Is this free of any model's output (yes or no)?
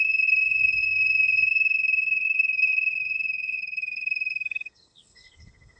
no